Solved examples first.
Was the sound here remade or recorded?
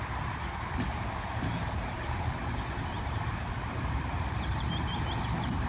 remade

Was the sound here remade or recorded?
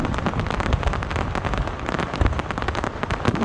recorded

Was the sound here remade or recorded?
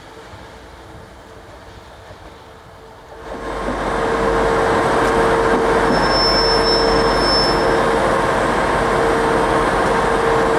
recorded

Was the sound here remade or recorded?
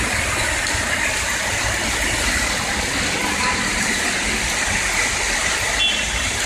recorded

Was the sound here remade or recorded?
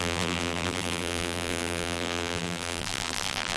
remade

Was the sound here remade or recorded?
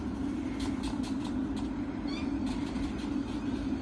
recorded